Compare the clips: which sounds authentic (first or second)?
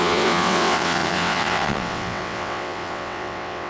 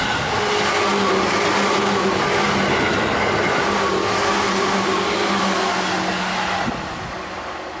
second